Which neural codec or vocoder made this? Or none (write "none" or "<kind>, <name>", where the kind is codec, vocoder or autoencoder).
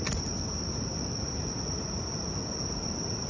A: none